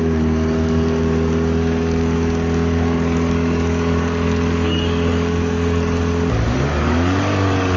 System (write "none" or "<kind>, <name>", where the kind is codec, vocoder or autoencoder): codec, DAC